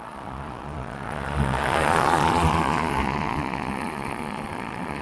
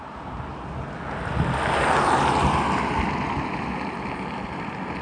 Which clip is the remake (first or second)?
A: first